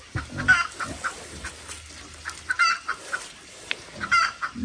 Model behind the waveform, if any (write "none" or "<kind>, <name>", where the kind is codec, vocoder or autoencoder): none